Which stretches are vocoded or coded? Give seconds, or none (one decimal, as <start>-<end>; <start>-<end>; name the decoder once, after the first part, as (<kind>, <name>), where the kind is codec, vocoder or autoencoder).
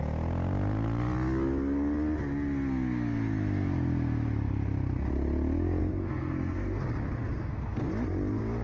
5.8-6.8 (codec, SNAC); 7.4-7.9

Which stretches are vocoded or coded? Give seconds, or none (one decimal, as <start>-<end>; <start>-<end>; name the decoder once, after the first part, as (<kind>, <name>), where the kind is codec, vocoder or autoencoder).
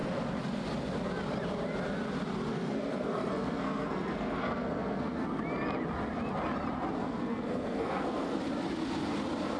2.5-5.4 (codec, SNAC); 7.0-8.4